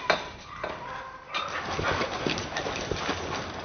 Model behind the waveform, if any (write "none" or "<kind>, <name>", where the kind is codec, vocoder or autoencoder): none